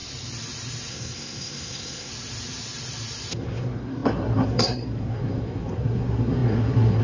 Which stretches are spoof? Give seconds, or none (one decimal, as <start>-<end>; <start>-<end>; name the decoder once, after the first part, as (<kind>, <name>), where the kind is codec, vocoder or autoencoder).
0.9-2.1 (codec, SNAC); 3.3-7.0